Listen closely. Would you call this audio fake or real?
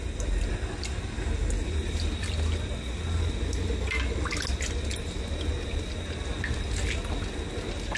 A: real